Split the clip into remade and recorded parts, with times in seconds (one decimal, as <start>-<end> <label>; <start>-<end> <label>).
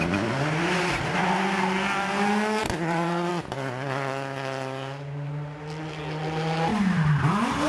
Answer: 0.0-2.6 recorded; 2.6-3.3 remade; 3.3-6.7 recorded; 6.7-7.3 remade; 7.3-7.7 recorded